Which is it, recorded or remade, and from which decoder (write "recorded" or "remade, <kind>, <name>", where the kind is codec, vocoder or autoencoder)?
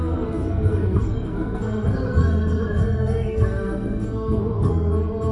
remade, codec, SNAC